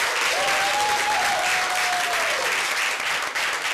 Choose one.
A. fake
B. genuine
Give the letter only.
B